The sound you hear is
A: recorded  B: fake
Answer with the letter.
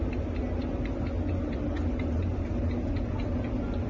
A